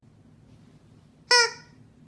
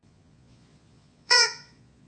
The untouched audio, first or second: first